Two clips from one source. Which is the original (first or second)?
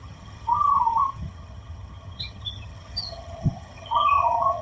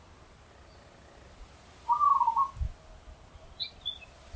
second